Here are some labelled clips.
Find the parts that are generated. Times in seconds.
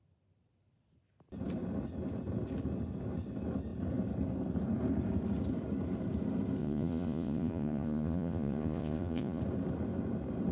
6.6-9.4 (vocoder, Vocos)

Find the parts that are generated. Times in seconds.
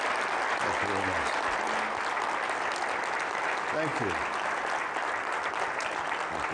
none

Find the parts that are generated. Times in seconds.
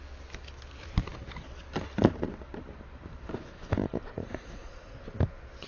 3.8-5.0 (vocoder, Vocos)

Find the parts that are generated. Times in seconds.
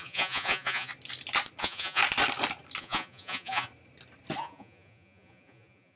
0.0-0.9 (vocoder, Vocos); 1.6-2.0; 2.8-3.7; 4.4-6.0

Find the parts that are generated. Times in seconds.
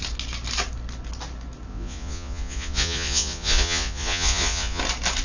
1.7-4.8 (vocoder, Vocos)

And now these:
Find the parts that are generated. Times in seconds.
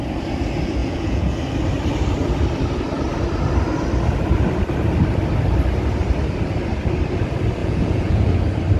0.8-1.4 (vocoder, Vocos); 7.6-8.4